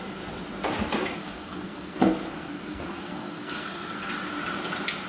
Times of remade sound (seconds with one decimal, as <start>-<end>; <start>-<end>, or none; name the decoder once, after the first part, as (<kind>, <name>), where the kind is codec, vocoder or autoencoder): 1.2-4.1 (codec, SNAC)